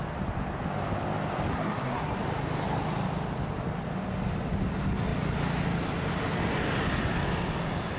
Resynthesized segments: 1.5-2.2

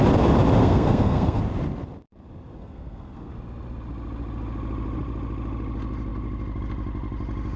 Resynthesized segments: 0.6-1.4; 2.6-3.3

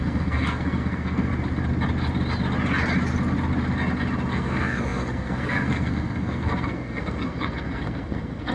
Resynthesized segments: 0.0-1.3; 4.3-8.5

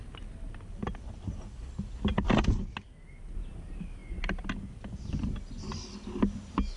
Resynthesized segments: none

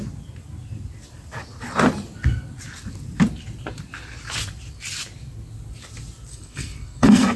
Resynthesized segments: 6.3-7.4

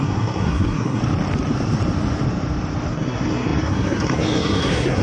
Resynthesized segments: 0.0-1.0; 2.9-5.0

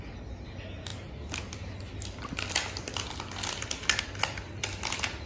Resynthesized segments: none